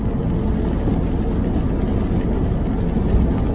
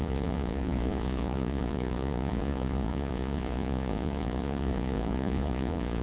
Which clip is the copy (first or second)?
second